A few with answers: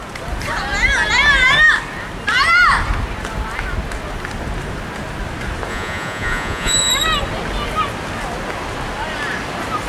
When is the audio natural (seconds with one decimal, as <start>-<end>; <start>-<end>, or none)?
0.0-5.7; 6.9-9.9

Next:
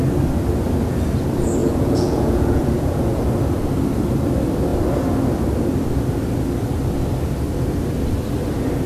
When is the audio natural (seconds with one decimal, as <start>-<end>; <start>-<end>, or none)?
0.0-1.6; 3.3-8.9

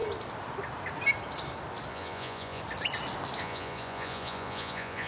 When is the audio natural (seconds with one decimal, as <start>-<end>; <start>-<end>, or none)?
0.0-1.9; 2.6-3.4